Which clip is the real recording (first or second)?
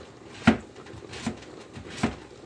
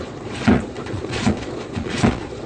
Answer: first